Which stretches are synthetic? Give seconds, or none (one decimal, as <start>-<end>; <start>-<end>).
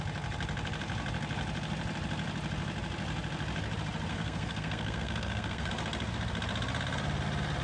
4.1-5.7